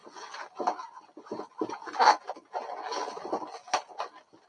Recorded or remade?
recorded